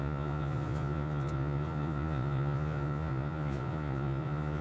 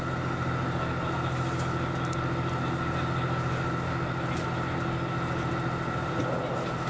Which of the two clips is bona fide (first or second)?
second